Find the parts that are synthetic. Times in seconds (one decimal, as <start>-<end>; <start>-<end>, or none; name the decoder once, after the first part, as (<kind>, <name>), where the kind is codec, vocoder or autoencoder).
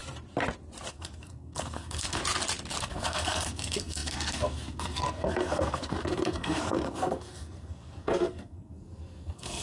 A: 0.9-2.2 (codec, SNAC); 2.8-9.6